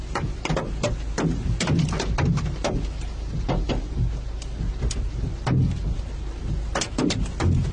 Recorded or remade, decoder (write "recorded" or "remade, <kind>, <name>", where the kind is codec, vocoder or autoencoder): recorded